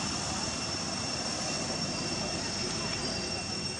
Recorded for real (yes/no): yes